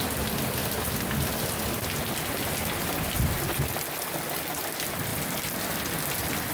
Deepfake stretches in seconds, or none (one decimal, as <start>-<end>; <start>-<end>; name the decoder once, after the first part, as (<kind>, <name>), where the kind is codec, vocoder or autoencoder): none